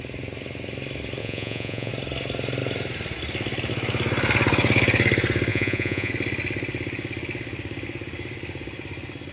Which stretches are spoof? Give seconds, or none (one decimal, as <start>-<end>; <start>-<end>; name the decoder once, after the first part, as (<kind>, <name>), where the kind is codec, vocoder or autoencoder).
1.2-1.9 (vocoder, Vocos); 5.5-6.1